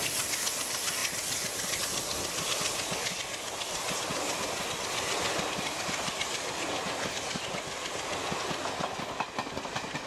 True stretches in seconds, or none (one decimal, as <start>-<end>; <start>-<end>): 0.0-10.1

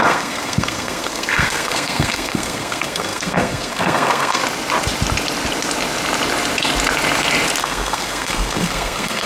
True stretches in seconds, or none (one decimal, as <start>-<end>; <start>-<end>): 4.4-7.6

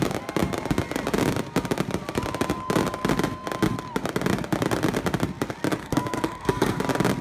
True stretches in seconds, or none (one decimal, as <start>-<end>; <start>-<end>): 0.0-5.8; 6.8-7.2

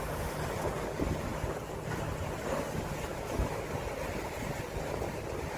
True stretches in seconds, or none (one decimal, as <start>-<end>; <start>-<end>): 0.0-3.1; 3.7-5.6